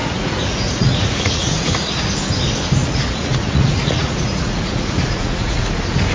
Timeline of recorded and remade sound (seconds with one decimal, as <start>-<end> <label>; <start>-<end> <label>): 0.0-1.9 remade; 1.9-2.8 recorded; 2.8-5.6 remade; 5.6-6.1 recorded